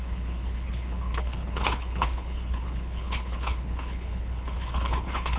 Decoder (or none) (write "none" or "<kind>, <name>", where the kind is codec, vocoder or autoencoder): codec, HILCodec